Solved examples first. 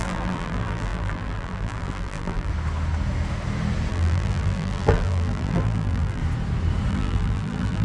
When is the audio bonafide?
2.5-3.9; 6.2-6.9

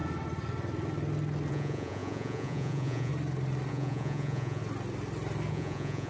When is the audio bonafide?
0.0-1.5; 3.1-3.7; 4.6-5.5

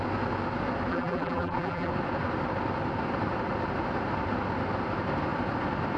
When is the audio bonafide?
0.0-0.9; 1.9-6.0

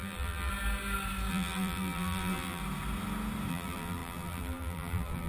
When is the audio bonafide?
0.5-1.3; 2.6-3.5

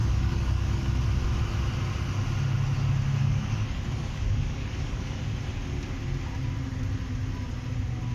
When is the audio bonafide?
1.0-3.2; 5.2-8.1

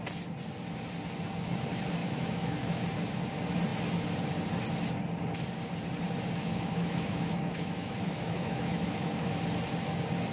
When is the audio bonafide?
0.0-2.0; 2.8-6.4; 9.3-10.3

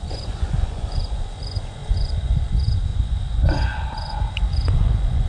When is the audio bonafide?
none

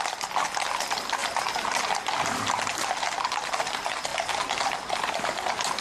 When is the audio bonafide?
0.0-5.8